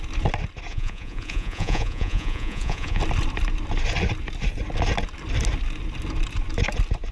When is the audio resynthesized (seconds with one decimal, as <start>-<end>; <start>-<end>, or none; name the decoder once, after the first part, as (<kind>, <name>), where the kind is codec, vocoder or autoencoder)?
0.7-3.0 (vocoder, Vocos)